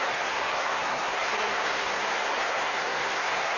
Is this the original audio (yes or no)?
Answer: no